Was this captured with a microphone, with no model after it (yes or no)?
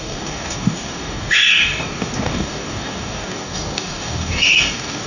no